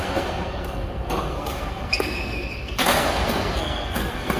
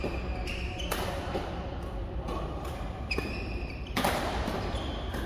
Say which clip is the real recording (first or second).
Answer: second